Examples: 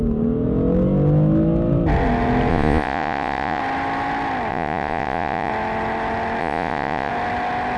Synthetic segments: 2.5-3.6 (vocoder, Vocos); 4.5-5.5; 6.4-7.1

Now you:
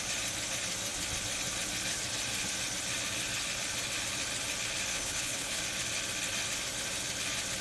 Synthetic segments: 4.9-5.6 (codec, HILCodec)

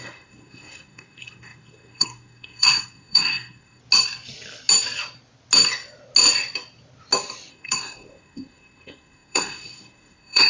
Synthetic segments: 0.0-3.8 (codec, SNAC); 7.5-10.5